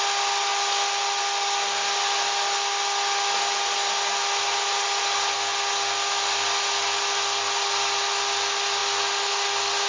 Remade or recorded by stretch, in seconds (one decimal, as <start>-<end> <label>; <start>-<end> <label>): 0.0-9.9 recorded